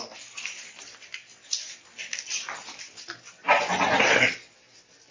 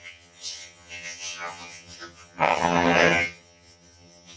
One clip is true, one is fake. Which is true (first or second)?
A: first